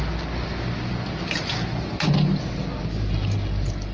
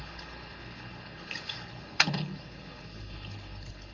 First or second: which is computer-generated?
second